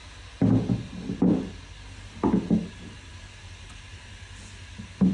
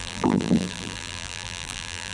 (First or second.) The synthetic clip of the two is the second